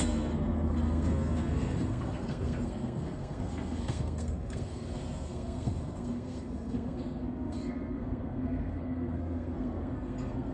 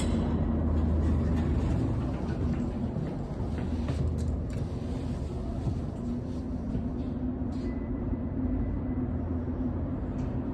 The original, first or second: second